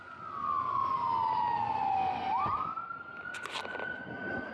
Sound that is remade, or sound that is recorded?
recorded